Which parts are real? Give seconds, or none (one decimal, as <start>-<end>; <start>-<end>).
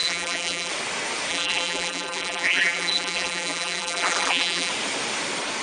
0.7-1.3; 4.7-5.6